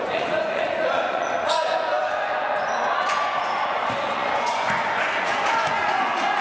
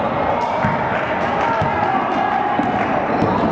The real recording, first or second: second